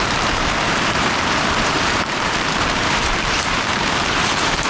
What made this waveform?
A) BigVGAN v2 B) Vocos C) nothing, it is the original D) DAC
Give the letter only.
A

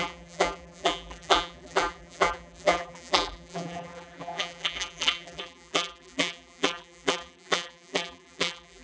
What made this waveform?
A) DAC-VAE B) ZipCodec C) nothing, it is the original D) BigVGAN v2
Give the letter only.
D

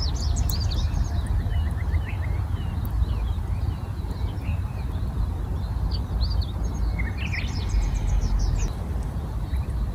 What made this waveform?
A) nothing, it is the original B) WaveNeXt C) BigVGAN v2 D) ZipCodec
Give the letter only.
A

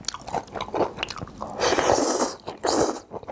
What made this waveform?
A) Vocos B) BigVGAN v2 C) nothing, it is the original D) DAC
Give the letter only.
C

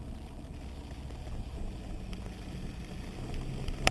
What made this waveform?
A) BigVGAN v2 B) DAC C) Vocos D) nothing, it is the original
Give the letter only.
D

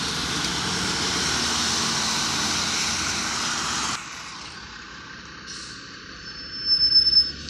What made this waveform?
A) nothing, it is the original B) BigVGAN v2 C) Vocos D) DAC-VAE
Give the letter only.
A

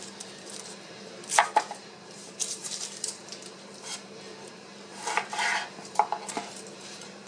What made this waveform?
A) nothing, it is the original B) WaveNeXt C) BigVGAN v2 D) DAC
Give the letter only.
C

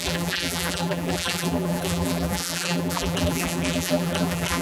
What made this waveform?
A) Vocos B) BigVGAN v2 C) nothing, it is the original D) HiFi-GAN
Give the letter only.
B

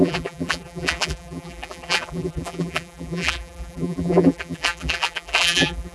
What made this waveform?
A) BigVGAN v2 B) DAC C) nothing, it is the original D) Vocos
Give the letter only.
A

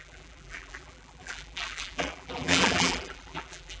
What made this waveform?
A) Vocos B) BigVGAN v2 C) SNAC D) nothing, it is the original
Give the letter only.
B